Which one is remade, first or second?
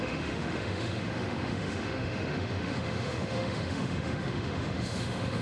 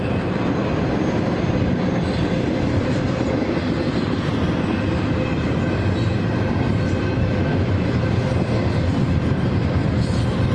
first